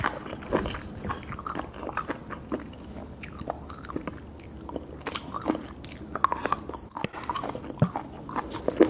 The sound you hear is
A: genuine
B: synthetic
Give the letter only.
A